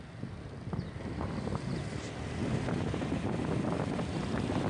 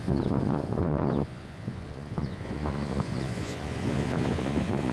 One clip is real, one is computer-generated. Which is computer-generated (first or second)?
second